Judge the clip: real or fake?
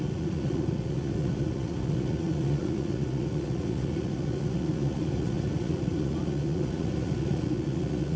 fake